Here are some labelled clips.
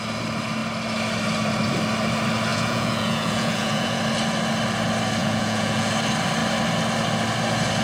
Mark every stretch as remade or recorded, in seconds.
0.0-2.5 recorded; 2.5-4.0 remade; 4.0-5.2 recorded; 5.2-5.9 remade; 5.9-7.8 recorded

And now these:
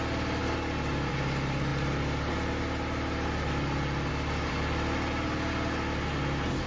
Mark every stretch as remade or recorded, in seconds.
0.0-6.7 recorded